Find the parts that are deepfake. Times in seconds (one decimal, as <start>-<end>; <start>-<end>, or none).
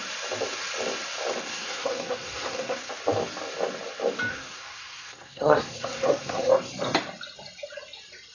1.4-2.9; 4.3-6.5